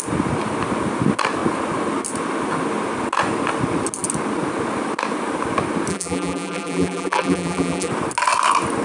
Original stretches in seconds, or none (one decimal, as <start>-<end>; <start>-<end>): 0.0-5.9; 7.9-8.8